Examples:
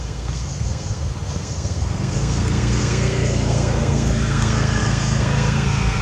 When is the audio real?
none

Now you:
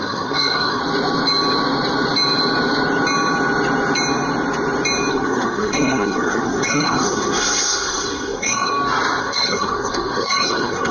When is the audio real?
0.8-5.1; 8.7-9.2

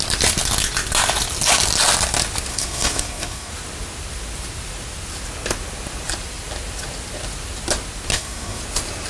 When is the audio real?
0.0-2.5; 3.5-8.1; 8.6-9.1